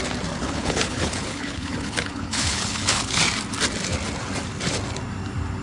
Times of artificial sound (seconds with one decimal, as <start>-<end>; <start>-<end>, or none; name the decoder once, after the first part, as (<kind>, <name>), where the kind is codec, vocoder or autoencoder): 0.4-3.2 (codec, HILCodec)